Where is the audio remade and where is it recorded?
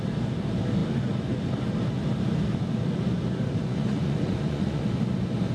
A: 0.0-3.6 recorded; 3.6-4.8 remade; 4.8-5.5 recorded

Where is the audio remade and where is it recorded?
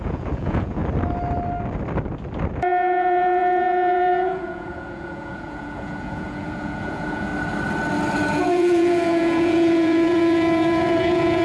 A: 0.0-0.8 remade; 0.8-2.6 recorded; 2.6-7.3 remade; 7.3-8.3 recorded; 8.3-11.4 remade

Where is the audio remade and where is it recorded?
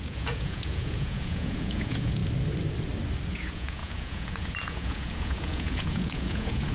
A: 0.0-2.2 remade; 2.2-3.3 recorded; 3.3-6.7 remade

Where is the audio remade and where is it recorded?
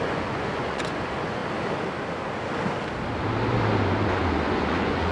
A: 0.0-1.4 remade; 1.4-4.5 recorded; 4.5-5.1 remade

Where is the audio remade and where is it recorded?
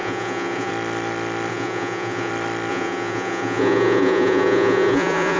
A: 0.0-0.7 remade; 0.7-1.5 recorded; 1.5-2.3 remade; 2.3-2.7 recorded; 2.7-5.4 remade